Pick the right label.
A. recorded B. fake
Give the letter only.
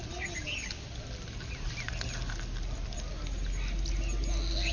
A